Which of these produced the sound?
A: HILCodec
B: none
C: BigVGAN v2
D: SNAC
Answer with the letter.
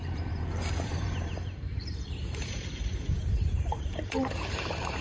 C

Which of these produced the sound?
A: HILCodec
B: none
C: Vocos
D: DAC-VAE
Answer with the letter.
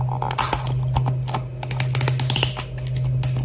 B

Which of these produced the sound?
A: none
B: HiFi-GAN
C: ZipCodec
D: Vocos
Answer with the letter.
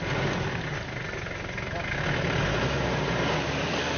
A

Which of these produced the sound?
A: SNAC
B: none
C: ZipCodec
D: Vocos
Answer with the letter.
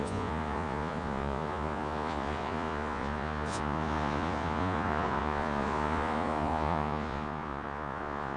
D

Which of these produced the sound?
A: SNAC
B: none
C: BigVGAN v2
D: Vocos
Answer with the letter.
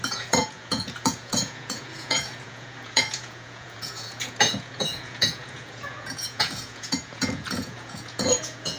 D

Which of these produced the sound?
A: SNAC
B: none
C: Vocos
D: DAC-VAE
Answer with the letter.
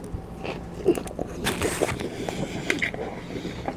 B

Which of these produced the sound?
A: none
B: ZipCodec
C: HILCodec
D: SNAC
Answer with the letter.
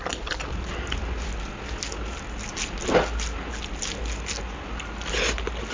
A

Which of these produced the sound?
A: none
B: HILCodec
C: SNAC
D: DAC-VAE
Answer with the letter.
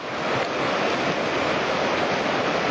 A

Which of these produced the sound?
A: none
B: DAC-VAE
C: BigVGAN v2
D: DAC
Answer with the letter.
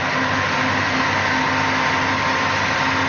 A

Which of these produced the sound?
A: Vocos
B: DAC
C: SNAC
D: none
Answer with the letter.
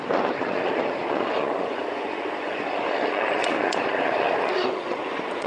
A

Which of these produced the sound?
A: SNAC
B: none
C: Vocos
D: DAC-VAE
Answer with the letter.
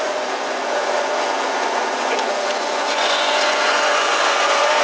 C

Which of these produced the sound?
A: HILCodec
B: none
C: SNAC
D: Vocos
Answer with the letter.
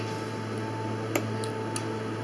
B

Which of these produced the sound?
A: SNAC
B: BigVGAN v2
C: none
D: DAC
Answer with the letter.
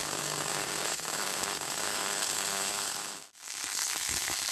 A